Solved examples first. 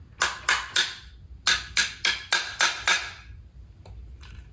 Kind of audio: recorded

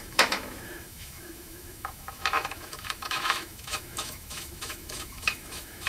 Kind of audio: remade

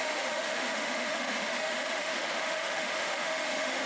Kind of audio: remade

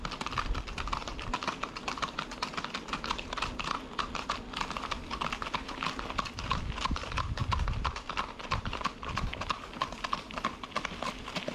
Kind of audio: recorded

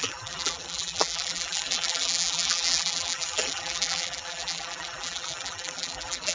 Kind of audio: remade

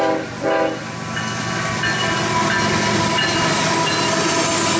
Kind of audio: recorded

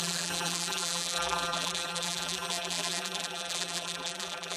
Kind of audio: remade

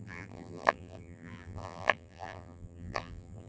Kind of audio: remade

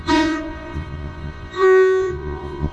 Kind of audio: remade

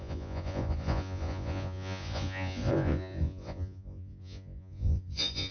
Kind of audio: remade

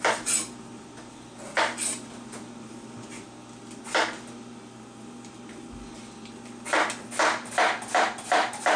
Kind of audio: recorded